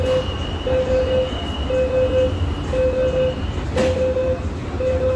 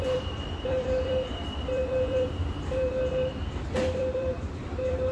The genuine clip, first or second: first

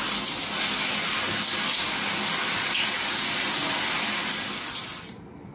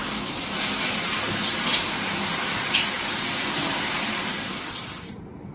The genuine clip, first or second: first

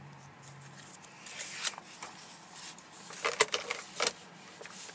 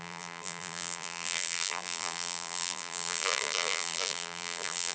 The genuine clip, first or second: first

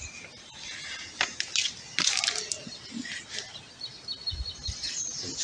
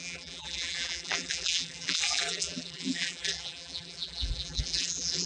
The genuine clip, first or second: first